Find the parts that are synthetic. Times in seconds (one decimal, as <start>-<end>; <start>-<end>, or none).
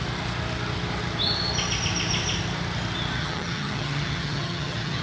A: 3.2-5.0